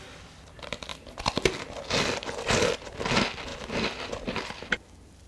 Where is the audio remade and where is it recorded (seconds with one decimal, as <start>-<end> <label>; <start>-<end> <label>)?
0.0-0.9 recorded; 0.9-1.5 remade; 1.5-3.5 recorded; 3.5-4.8 remade; 4.8-5.3 recorded